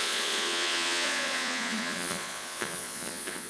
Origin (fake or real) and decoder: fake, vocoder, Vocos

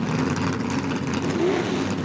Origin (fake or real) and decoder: real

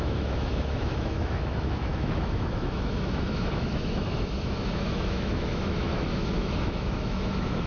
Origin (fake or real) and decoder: fake, autoencoder, DAC-VAE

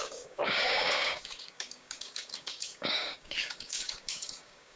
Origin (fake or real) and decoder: fake, codec, DAC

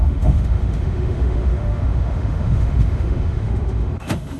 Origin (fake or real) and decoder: fake, autoencoder, DAC-VAE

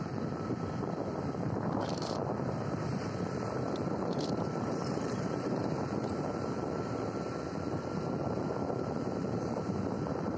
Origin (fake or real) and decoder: fake, vocoder, BigVGAN v2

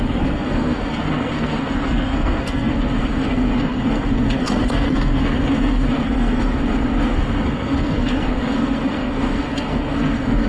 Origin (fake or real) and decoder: fake, codec, SNAC